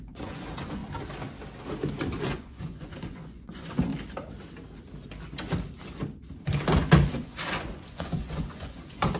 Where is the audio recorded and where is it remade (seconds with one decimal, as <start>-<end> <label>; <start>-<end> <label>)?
0.0-0.8 remade; 0.8-2.2 recorded; 2.2-3.9 remade; 3.9-7.1 recorded; 7.1-9.2 remade